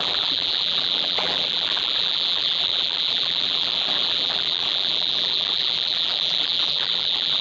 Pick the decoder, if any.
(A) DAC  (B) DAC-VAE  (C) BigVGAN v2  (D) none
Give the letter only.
C